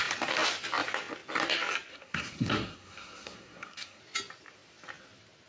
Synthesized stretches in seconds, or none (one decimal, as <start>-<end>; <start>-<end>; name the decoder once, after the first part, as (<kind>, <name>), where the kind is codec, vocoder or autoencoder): 1.9-4.0 (codec, SNAC)